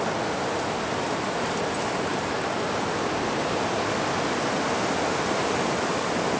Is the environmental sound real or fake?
real